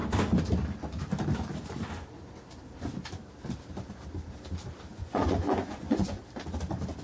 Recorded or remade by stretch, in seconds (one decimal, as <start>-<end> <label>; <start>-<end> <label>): 0.0-4.9 recorded; 4.9-6.2 remade; 6.2-7.0 recorded